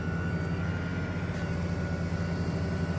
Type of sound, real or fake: real